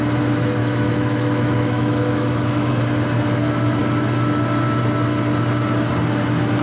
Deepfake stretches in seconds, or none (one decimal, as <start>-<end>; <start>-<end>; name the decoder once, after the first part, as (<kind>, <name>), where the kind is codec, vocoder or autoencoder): 0.6-2.7 (autoencoder, DAC-VAE)